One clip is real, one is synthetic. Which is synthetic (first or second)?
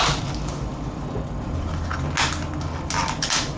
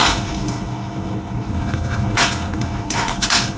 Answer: second